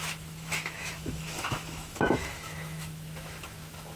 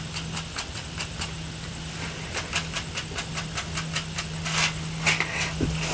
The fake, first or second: first